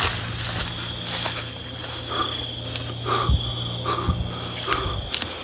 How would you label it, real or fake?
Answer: real